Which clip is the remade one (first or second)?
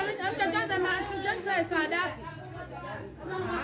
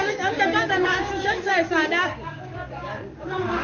second